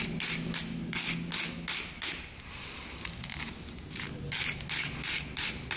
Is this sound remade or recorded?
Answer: recorded